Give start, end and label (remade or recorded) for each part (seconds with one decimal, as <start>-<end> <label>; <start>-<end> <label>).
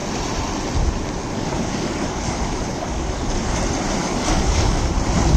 0.0-1.2 recorded; 1.2-3.6 remade; 3.6-4.0 recorded; 4.0-4.9 remade; 4.9-5.4 recorded